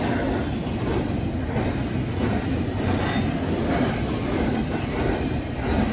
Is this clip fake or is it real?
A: real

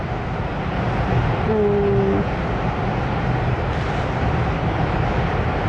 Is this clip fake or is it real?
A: real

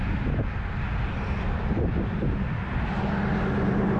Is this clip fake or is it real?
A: real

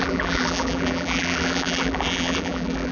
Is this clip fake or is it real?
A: fake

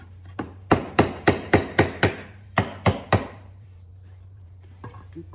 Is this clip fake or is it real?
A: fake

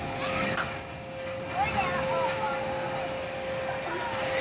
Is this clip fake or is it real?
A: real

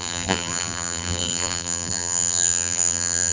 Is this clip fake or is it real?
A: fake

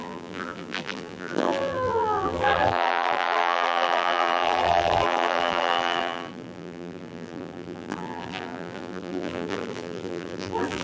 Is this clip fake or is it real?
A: fake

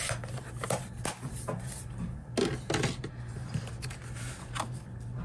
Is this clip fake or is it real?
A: real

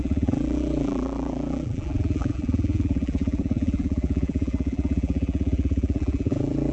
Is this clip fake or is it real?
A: fake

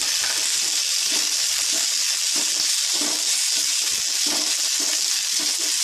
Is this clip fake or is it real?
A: real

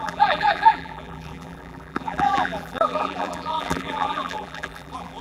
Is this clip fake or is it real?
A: fake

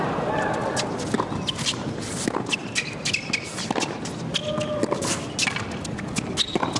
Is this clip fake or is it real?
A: real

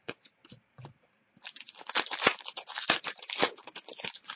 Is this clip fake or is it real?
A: fake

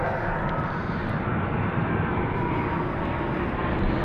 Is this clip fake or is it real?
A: real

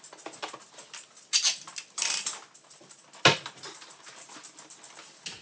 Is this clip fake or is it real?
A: real